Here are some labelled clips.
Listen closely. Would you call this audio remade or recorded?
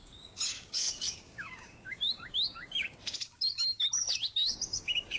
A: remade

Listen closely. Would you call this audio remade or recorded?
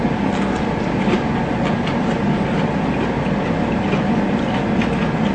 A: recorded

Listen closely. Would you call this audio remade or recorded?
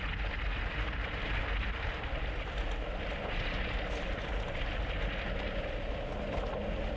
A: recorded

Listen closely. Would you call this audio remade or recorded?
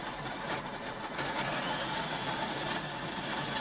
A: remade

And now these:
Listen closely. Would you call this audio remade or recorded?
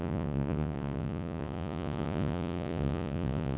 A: remade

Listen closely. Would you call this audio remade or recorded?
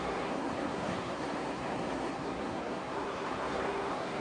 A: remade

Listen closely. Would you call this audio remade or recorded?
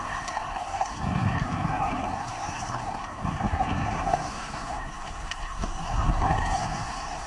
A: remade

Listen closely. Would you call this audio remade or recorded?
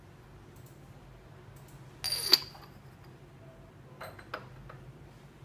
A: recorded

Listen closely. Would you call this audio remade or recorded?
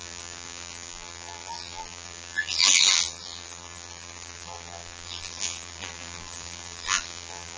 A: remade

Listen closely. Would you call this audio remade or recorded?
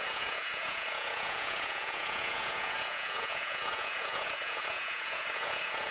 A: remade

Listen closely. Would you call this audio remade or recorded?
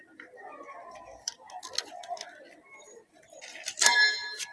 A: recorded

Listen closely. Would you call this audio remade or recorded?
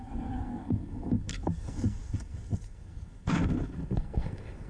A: remade